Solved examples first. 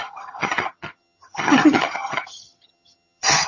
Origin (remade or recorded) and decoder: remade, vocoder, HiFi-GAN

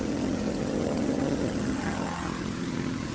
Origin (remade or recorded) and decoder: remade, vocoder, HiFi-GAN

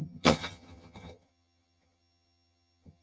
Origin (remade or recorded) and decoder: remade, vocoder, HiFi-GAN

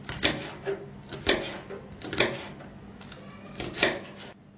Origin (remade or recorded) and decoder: recorded